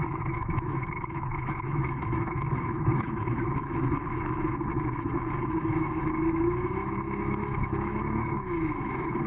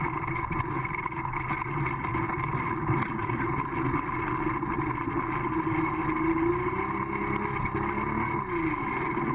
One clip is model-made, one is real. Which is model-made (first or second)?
first